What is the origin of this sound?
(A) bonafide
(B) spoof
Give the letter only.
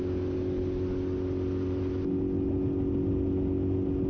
A